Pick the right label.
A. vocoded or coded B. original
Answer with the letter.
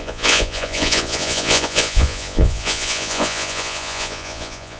A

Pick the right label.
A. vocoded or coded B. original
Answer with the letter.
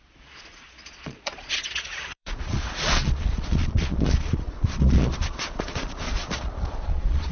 A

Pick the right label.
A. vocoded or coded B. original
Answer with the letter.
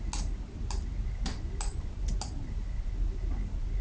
B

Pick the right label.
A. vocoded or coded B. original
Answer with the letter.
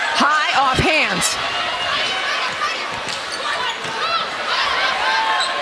B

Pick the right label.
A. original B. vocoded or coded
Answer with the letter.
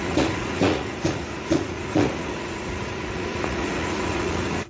B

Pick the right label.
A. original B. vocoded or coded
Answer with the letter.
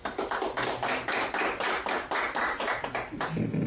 A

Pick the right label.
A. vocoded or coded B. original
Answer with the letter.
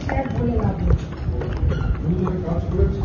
B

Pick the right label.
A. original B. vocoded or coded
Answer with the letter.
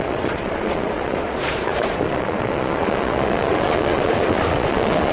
B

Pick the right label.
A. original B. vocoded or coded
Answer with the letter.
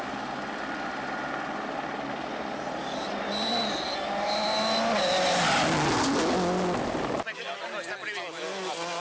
A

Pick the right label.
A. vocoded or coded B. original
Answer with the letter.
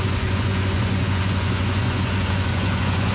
A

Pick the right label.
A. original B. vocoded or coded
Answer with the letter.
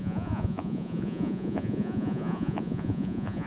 B